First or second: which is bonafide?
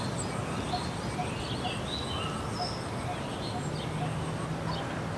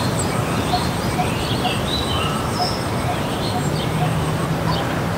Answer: first